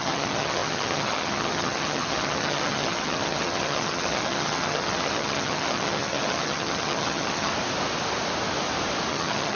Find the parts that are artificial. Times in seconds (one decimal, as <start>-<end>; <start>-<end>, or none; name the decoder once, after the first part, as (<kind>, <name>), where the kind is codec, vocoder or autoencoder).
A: 0.0-7.5 (vocoder, HiFi-GAN); 9.1-9.6